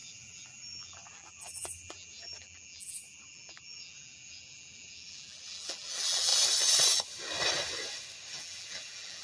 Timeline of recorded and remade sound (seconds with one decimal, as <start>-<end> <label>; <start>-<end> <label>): 0.0-6.3 remade; 6.3-8.3 recorded; 8.3-9.2 remade